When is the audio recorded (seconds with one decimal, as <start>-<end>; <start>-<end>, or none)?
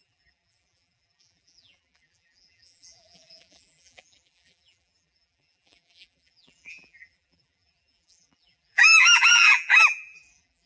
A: none